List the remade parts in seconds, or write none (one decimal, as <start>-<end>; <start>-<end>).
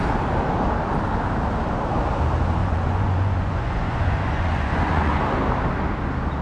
2.6-5.2